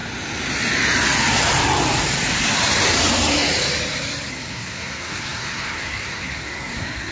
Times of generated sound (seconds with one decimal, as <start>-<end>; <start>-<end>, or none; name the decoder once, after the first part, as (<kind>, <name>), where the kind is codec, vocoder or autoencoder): 4.3-7.1 (codec, SNAC)